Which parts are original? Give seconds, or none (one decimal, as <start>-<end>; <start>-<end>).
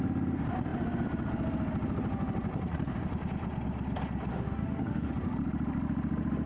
0.0-4.3; 5.1-6.5